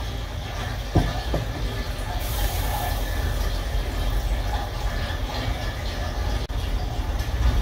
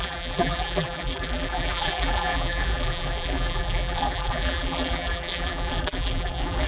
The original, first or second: first